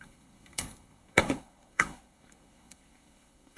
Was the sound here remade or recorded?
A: remade